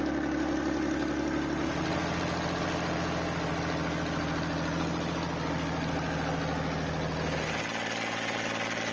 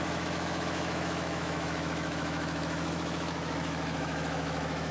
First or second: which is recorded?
first